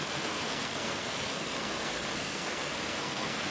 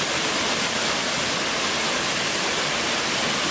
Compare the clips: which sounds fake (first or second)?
first